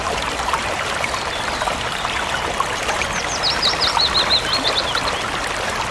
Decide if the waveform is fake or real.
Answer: fake